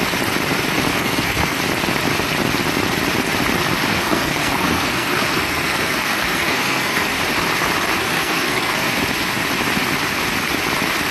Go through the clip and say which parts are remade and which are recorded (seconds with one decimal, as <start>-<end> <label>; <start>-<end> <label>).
0.0-0.9 recorded; 0.9-1.6 remade; 1.6-3.9 recorded; 3.9-7.2 remade; 7.2-8.0 recorded; 8.0-9.0 remade; 9.0-11.1 recorded